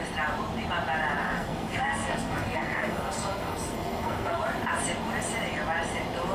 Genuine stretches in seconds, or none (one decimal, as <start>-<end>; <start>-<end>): 0.0-1.2; 4.4-6.3

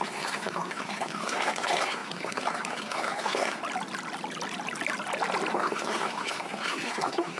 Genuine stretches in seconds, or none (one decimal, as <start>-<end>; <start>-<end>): 3.6-5.5

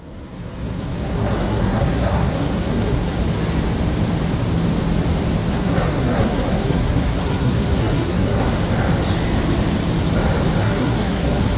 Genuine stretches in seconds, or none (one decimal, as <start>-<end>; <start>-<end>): 3.2-5.5; 8.6-10.6

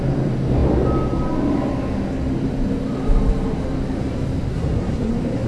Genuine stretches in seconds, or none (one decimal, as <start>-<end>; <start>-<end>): 0.0-4.5; 5.1-5.5

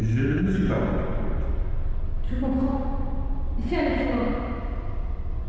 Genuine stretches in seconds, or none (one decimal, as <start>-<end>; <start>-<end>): 0.0-5.5

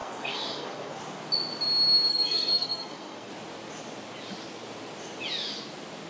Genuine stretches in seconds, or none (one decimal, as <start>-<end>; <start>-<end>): 1.0-2.1; 3.3-6.1

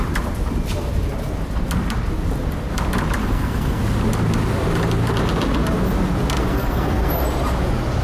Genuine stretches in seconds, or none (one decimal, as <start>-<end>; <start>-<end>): 0.0-3.2; 3.8-6.4; 7.1-8.0